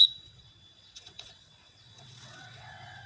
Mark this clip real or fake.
fake